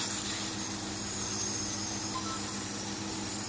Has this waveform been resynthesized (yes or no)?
no